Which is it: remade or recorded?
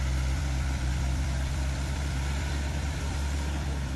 remade